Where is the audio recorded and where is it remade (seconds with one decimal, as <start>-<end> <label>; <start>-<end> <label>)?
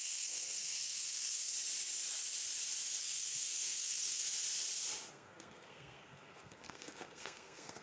0.0-1.5 remade; 1.5-3.0 recorded; 3.0-4.2 remade; 4.2-5.1 recorded; 5.1-7.8 remade